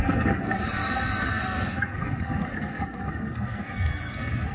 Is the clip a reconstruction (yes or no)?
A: yes